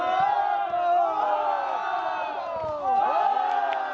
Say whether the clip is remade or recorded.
recorded